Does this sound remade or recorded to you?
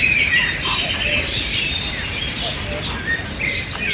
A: remade